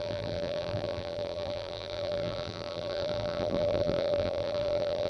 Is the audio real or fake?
fake